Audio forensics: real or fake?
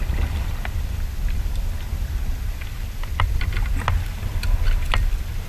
real